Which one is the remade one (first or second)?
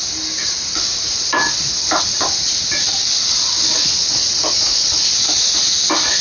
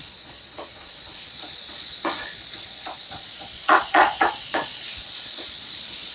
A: second